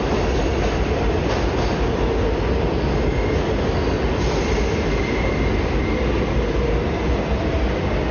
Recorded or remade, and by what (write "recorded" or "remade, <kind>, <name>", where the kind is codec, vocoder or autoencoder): recorded